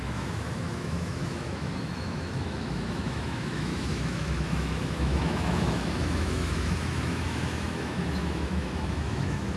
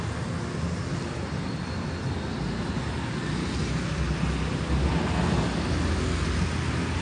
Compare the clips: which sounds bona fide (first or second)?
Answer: second